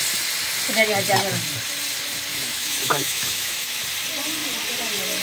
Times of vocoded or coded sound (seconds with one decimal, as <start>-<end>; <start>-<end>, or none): 2.3-3.8